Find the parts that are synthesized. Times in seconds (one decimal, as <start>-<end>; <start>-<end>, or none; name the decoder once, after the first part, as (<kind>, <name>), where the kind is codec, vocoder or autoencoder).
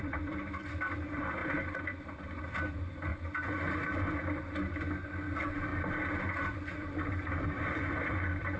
0.0-1.4 (vocoder, BigVGAN v2); 2.4-3.1; 5.3-5.7; 6.3-8.6